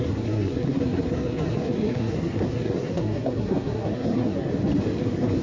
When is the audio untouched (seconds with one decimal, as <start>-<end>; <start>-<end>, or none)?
4.5-5.0